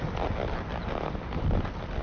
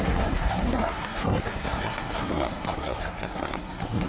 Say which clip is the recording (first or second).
first